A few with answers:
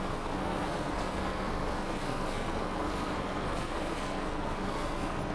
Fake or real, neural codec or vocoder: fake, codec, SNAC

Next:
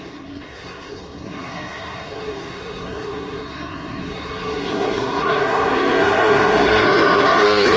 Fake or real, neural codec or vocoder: fake, codec, SNAC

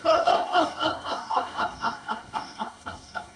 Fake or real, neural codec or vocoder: fake, codec, SNAC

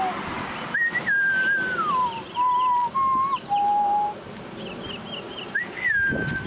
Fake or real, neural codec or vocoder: real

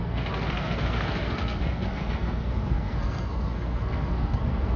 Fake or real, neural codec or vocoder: fake, codec, SNAC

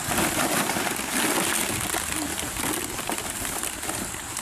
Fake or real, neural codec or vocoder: real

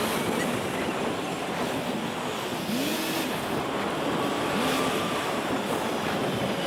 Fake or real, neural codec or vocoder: real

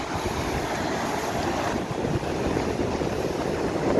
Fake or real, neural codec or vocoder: real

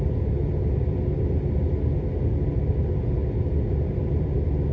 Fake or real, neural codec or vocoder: real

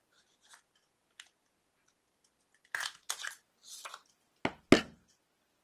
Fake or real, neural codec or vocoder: real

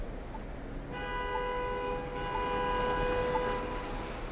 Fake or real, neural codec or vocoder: real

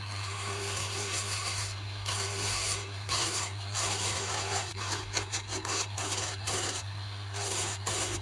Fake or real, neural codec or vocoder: fake, codec, SNAC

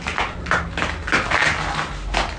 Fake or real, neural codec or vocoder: real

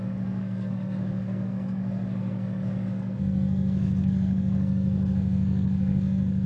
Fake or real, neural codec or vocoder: fake, codec, SNAC